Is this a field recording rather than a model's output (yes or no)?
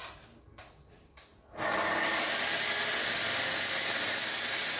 yes